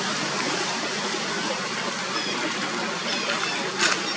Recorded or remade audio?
recorded